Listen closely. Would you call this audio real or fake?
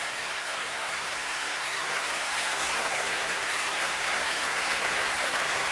fake